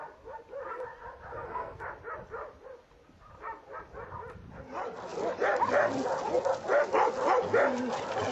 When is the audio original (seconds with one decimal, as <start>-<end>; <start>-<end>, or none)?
0.0-1.3; 1.8-8.3